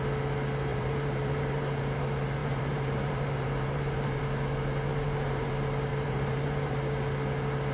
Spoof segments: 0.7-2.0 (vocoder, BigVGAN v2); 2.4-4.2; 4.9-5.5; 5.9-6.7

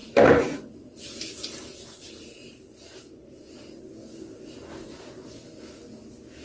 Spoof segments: 0.0-3.8 (vocoder, BigVGAN v2)

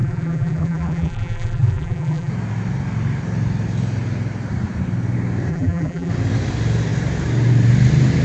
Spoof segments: 0.0-2.3 (vocoder, BigVGAN v2); 5.5-6.1

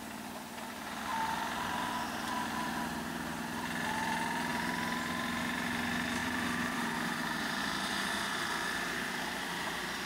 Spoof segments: 6.2-10.1 (vocoder, BigVGAN v2)

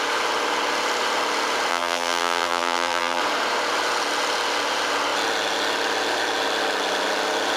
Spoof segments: 1.7-3.2 (vocoder, BigVGAN v2)

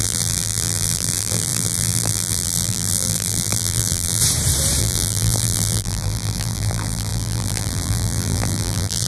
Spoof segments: 0.0-4.2 (vocoder, BigVGAN v2); 4.8-9.1

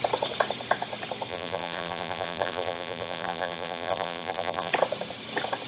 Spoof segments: 1.3-4.7 (vocoder, BigVGAN v2)